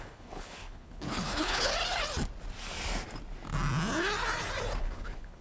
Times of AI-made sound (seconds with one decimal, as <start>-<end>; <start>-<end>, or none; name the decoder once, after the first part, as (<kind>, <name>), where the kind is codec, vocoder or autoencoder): 0.0-1.7 (codec, HILCodec); 4.8-5.4